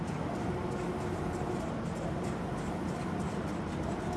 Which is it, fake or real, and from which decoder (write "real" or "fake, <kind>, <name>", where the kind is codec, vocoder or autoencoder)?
real